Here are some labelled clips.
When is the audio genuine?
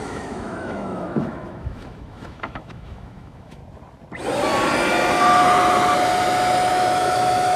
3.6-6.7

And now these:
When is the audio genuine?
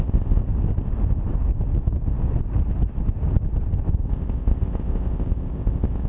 0.4-4.1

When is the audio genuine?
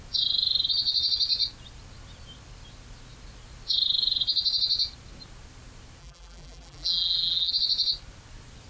0.0-6.0; 7.5-8.7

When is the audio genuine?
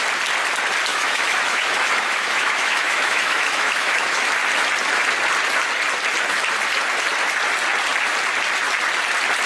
0.0-0.9; 4.3-9.5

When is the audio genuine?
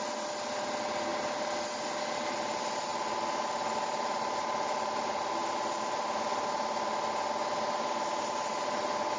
0.0-9.2